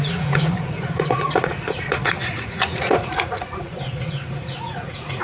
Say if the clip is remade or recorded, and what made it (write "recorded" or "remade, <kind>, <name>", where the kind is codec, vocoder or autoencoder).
remade, vocoder, Vocos